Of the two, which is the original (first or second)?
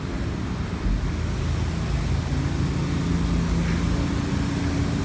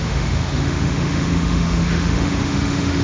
first